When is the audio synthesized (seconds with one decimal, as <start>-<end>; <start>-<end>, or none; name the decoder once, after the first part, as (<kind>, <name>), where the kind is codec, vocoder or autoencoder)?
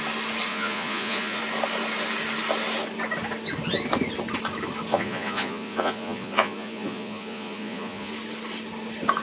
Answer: 0.5-1.4 (vocoder, Vocos); 4.9-8.1